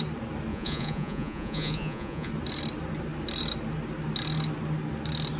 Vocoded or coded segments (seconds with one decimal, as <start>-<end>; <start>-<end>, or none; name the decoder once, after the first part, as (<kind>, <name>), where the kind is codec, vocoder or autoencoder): 0.5-2.3 (vocoder, Vocos)